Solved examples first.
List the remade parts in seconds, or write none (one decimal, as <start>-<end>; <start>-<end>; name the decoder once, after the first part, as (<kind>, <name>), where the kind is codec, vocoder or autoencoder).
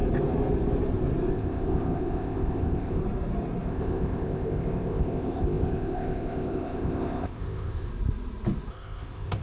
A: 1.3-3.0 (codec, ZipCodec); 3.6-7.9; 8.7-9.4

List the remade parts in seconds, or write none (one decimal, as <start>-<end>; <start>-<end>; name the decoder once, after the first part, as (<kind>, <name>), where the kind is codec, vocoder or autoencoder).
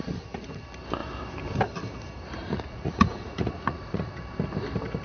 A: 2.4-4.1 (vocoder, Vocos)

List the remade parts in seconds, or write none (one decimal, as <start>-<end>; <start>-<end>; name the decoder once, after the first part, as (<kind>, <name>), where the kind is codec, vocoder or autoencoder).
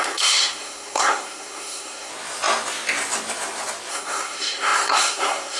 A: 0.0-2.1 (codec, SNAC); 3.9-5.6